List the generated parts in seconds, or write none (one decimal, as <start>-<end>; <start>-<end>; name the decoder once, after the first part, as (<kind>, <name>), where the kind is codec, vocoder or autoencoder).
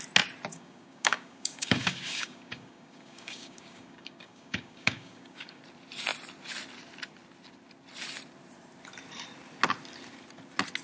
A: 0.5-5.6 (codec, DAC)